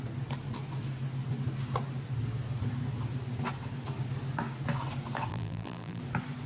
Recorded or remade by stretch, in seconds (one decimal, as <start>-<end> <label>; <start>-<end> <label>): 0.0-5.3 recorded; 5.3-6.0 remade; 6.0-6.5 recorded